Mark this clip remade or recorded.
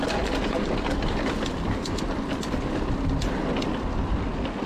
recorded